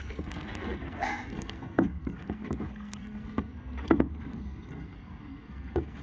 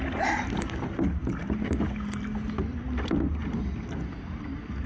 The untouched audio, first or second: second